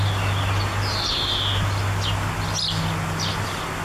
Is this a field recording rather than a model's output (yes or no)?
yes